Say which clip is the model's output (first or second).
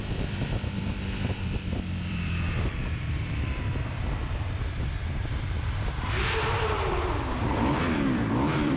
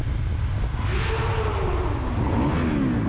first